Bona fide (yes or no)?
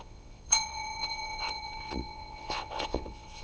no